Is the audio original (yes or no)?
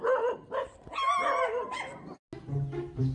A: yes